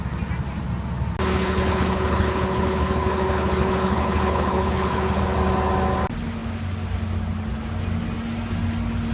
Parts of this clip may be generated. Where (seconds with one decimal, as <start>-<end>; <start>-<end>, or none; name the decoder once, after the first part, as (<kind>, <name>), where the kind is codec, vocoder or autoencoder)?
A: 1.3-5.2 (codec, HILCodec)